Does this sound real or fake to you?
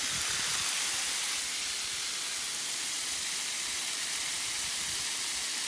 real